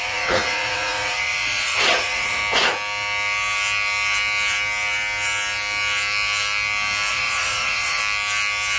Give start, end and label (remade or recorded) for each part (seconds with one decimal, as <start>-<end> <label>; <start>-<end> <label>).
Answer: 0.0-2.4 remade; 2.4-7.1 recorded; 7.1-8.0 remade; 8.0-8.8 recorded